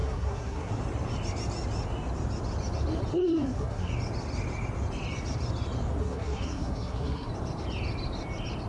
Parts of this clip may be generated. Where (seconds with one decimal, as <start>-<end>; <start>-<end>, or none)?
0.0-0.7; 3.1-3.9; 6.0-7.3